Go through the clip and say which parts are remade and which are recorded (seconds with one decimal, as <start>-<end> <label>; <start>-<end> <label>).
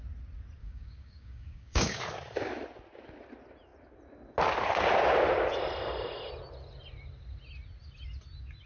0.0-0.6 recorded; 0.6-2.0 remade; 2.0-8.7 recorded